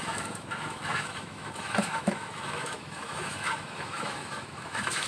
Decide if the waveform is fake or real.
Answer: fake